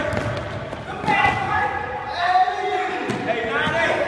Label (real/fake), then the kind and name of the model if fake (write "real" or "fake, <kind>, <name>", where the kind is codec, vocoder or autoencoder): real